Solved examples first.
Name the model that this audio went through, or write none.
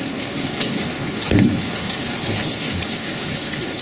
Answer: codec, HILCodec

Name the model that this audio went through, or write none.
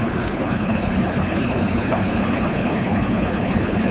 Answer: codec, HILCodec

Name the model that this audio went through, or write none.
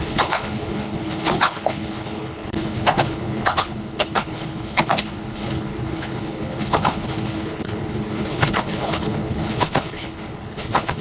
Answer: codec, HILCodec